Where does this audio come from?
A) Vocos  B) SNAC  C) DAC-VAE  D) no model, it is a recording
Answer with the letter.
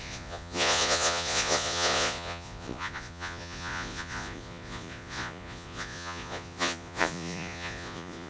A